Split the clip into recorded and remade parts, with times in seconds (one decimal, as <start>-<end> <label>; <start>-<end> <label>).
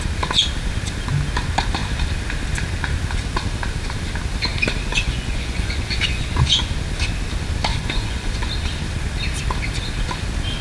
0.0-4.9 recorded; 4.9-6.7 remade; 6.7-7.7 recorded; 7.7-8.5 remade; 8.5-10.6 recorded